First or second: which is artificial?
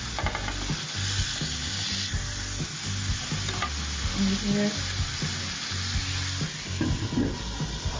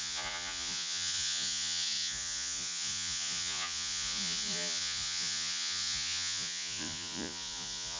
second